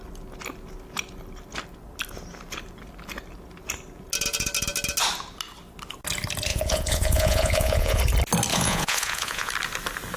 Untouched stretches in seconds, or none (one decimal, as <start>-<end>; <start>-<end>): 0.0-6.5; 8.0-8.5; 9.5-10.2